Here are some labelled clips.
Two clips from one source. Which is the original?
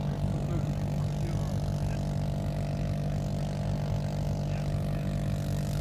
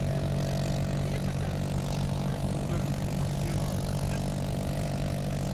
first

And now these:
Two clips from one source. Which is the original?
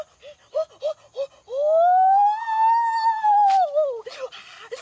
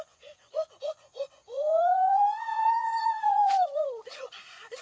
first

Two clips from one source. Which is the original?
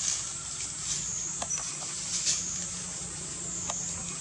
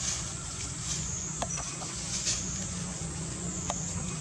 first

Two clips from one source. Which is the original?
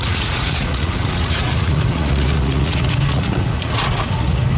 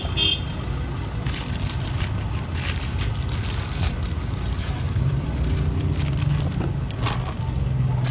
second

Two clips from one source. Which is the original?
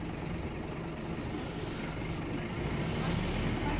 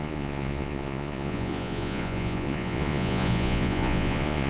first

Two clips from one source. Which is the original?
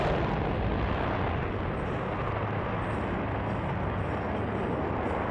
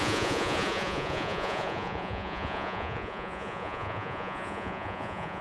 first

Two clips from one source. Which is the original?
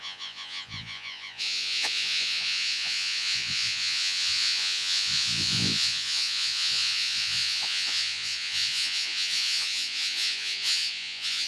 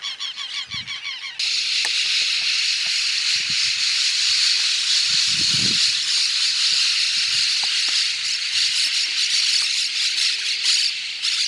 second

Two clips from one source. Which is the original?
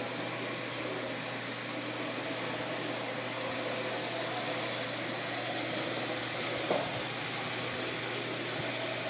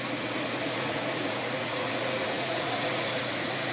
first